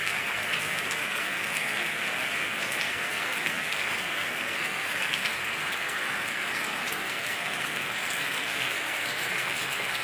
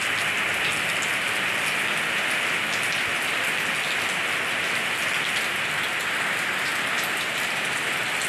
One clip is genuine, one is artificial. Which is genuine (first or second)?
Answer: second